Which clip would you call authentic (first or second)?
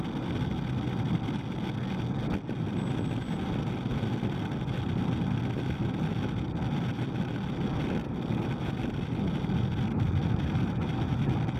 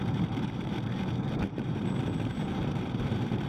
first